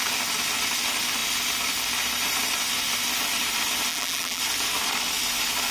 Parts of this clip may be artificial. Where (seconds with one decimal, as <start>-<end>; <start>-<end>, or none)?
3.9-4.4